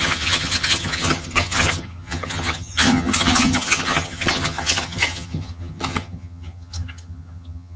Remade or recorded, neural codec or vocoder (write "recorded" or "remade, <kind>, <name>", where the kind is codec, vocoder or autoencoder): remade, vocoder, HiFi-GAN